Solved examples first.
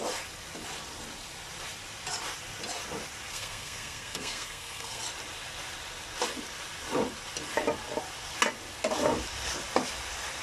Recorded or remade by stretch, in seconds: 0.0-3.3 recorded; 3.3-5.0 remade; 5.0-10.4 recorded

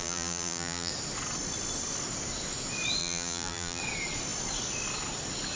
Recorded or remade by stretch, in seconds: 0.0-0.9 remade; 0.9-3.0 recorded; 3.0-3.8 remade; 3.8-5.6 recorded